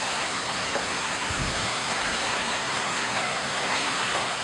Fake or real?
fake